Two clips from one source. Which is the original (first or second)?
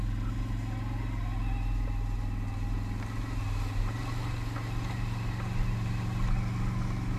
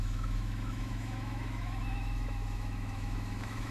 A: first